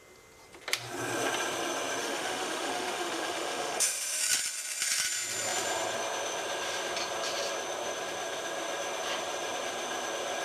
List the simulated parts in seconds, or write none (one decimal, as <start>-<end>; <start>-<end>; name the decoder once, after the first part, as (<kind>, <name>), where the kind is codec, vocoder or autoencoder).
2.0-4.2 (autoencoder, DAC-VAE)